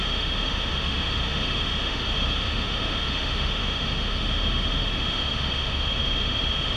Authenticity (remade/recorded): remade